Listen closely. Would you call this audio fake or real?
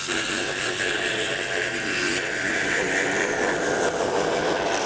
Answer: real